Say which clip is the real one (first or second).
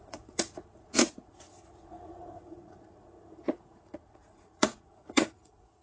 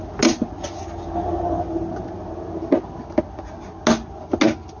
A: second